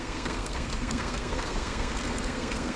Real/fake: fake